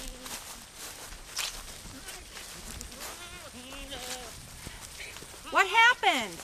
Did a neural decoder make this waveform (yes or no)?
no